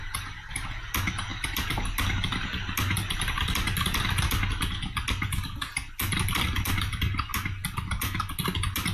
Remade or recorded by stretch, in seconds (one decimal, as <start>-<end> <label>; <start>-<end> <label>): 0.0-8.9 recorded